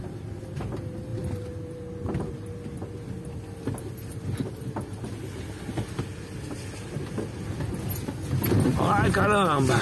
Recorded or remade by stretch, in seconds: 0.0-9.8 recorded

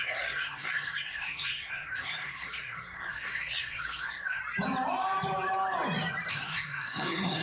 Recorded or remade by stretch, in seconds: 0.0-4.4 remade; 4.4-6.3 recorded; 6.3-7.4 remade